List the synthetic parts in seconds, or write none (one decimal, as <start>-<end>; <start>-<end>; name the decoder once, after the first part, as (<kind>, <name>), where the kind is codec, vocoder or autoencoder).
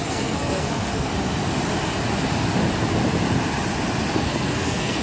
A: 0.0-1.1 (codec, SNAC); 4.1-5.0